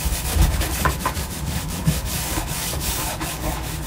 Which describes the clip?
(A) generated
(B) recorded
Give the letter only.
A